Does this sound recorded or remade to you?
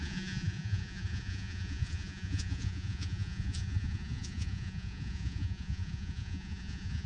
remade